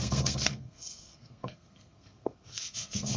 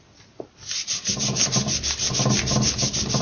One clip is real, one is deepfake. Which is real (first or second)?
second